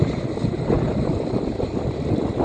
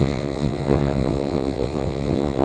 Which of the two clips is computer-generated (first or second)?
second